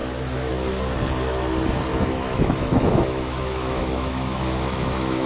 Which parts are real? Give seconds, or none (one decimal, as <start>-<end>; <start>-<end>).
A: 0.5-1.9